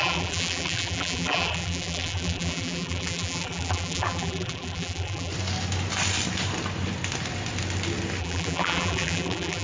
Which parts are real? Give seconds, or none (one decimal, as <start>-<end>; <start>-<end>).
5.3-8.2